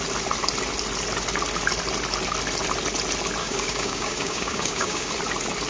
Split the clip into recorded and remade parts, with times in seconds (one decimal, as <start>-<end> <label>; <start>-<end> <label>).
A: 0.0-3.4 recorded; 3.4-5.1 remade; 5.1-5.7 recorded